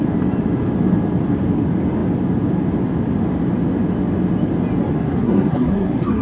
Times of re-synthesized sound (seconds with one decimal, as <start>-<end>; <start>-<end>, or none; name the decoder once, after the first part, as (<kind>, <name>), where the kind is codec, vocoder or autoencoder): 4.9-6.2 (codec, SNAC)